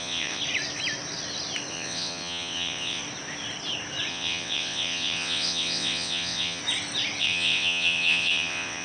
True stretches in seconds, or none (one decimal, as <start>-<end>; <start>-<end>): 0.4-1.7; 3.0-4.1; 6.6-7.2